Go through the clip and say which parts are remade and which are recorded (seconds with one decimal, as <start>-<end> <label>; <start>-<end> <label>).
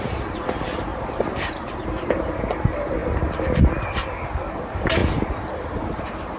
0.0-6.4 recorded